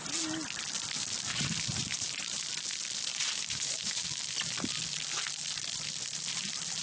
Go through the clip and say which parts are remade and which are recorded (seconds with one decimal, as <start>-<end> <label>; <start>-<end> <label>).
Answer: 0.0-1.3 recorded; 1.3-2.5 remade; 2.5-3.1 recorded; 3.1-4.0 remade; 4.0-6.8 recorded